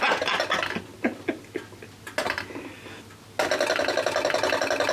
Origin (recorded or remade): recorded